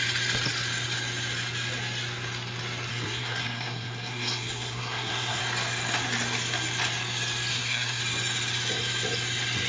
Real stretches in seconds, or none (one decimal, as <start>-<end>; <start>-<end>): 0.0-2.9; 5.4-7.5; 8.0-9.7